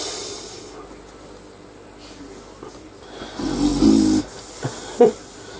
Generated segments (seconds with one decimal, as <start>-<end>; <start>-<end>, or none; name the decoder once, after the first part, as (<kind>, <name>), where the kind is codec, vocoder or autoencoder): none